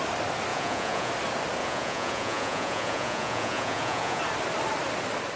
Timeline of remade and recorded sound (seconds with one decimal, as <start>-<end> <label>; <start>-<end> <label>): 0.0-0.5 recorded; 0.5-1.1 remade; 1.1-1.6 recorded; 1.6-4.2 remade; 4.2-5.4 recorded